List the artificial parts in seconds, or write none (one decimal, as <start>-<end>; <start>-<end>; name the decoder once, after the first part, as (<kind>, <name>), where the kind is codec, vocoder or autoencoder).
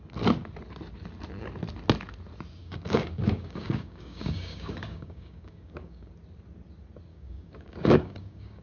2.6-6.1 (codec, DAC); 7.1-8.6